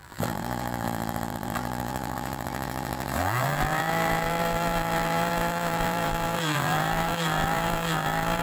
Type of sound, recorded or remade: remade